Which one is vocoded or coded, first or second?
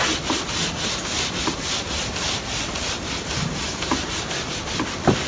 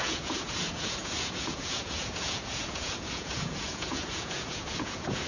second